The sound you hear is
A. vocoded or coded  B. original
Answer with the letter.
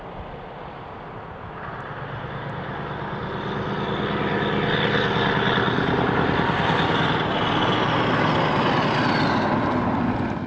B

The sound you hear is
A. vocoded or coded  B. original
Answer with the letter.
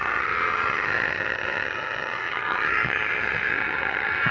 A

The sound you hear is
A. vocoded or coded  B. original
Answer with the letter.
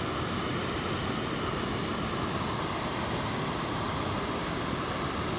B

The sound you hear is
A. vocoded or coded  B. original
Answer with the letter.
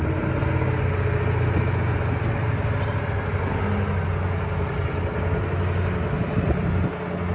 B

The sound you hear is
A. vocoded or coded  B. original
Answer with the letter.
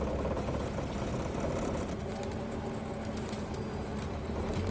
B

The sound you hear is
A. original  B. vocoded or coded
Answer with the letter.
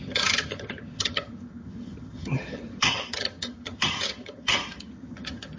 B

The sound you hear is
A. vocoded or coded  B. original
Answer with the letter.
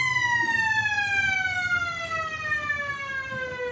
B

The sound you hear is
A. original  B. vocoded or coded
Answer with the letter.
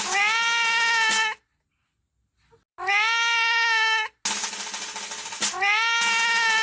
A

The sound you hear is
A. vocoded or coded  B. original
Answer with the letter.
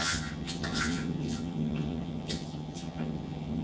A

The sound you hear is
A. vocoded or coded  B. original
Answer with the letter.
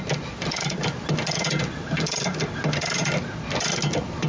B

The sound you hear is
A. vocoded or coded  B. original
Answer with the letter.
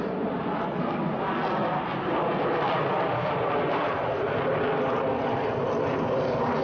B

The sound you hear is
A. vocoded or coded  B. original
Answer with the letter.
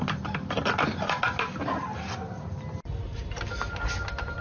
B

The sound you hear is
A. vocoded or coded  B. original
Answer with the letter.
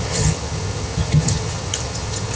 A